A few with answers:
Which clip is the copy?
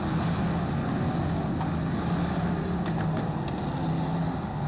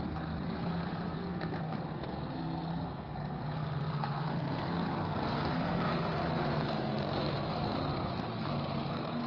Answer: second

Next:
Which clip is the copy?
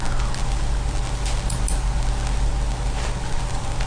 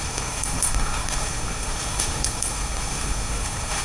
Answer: second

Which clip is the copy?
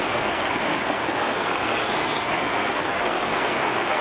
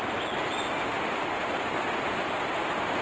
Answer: first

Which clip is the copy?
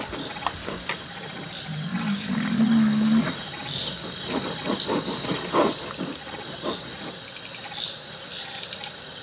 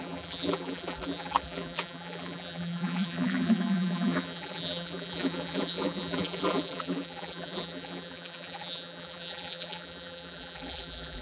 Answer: second